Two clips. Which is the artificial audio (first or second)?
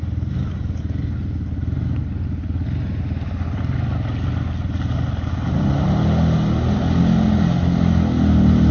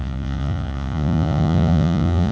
second